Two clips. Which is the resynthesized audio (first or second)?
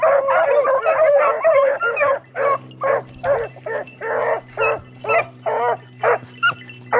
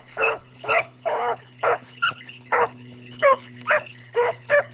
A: second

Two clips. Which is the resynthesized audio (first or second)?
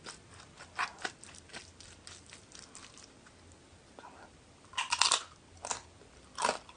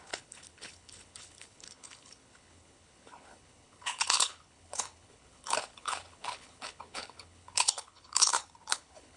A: second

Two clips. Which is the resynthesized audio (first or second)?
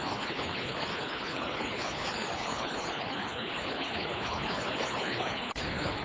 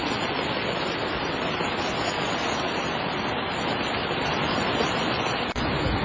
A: first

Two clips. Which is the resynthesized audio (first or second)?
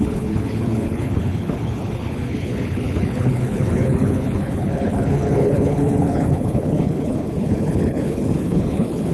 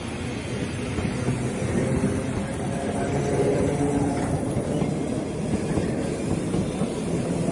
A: first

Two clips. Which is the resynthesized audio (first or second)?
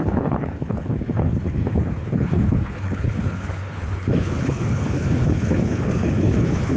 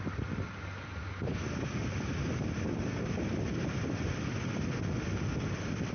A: first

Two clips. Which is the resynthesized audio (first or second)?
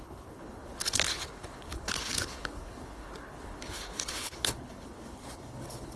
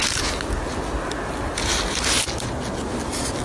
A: first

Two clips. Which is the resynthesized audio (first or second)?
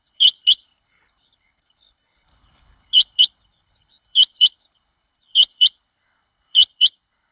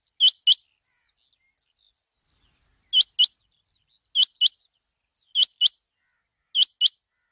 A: first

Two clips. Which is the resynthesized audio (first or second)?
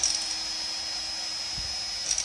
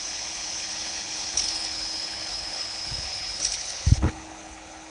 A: second